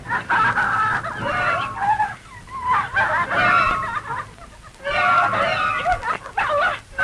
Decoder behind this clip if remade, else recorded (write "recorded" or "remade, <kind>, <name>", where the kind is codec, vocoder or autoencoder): recorded